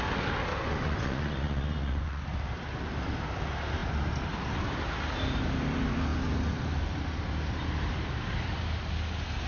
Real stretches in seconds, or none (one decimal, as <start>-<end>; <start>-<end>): 0.0-0.5; 2.2-9.5